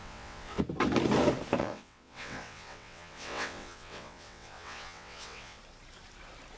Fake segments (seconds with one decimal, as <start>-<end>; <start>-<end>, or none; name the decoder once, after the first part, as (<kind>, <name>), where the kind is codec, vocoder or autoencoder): 0.0-0.6 (vocoder, WaveNeXt); 1.6-5.6